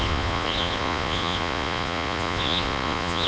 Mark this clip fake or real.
fake